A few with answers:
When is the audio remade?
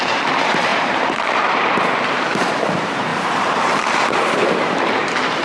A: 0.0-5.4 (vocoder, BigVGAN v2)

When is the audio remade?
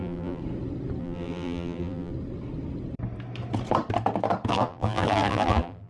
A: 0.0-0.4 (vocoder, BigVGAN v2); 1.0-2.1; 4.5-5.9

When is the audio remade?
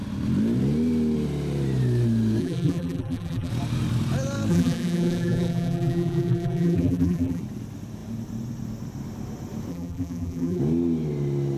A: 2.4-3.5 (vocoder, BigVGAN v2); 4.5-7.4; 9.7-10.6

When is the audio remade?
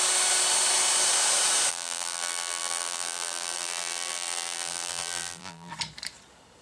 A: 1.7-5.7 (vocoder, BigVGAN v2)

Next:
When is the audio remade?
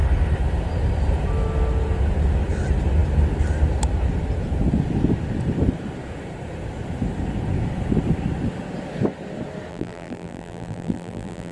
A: 9.7-11.5 (vocoder, BigVGAN v2)